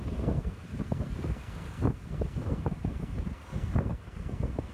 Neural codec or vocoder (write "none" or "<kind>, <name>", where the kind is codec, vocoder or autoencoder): codec, SNAC